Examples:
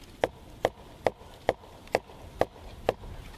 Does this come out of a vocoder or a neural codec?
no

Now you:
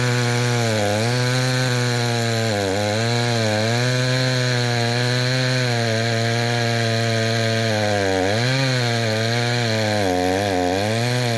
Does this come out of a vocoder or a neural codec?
no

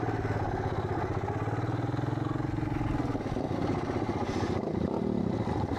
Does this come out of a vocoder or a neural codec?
no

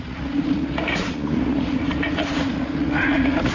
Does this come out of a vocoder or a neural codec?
yes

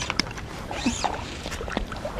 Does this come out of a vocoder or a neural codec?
yes